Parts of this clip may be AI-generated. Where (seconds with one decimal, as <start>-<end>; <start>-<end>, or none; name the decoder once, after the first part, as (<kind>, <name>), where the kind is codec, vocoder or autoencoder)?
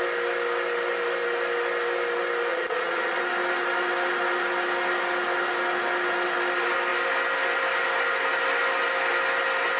2.5-3.2 (vocoder, Vocos)